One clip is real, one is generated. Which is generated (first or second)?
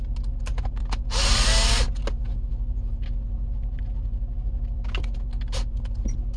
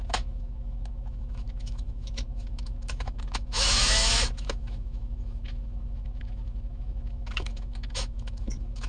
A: second